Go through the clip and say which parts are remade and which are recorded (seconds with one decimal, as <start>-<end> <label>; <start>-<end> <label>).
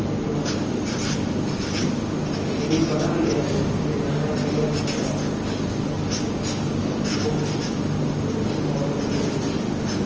0.0-10.1 recorded